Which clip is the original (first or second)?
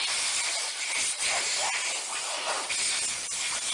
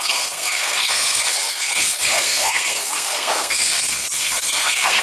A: first